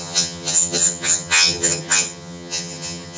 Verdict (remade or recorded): remade